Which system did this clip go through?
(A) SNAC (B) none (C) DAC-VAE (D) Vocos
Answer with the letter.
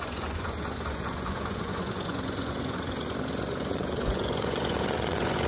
D